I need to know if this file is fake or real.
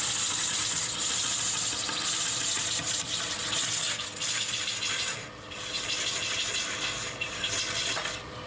real